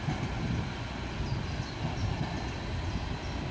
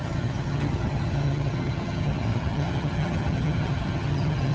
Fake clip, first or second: second